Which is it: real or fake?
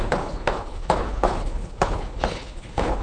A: fake